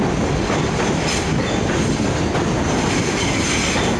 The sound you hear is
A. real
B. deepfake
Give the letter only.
A